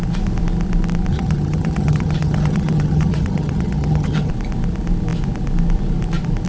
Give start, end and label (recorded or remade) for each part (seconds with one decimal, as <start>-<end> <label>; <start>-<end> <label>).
0.0-1.1 recorded; 1.1-4.3 remade; 4.3-6.5 recorded